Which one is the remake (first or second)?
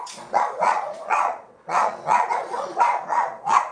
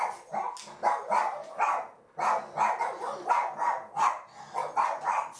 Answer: first